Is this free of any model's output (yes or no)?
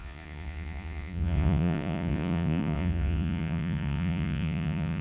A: no